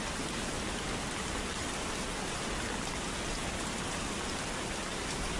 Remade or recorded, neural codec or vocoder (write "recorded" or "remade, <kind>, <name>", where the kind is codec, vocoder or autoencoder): recorded